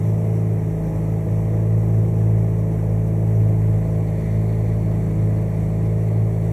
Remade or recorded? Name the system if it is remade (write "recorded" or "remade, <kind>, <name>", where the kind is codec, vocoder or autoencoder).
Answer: recorded